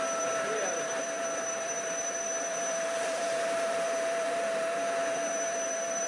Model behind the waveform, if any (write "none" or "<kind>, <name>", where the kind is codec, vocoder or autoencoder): vocoder, BigVGAN v2